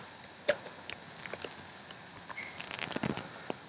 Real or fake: real